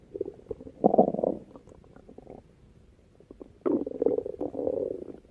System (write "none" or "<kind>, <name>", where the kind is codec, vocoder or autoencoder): none